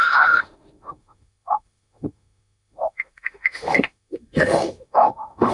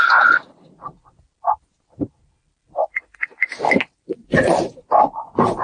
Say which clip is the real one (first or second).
second